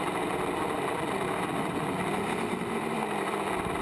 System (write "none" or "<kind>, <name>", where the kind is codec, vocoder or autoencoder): vocoder, BigVGAN v2